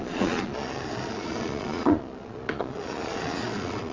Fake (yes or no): yes